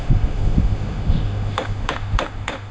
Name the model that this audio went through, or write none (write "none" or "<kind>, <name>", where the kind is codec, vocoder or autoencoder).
autoencoder, DAC-VAE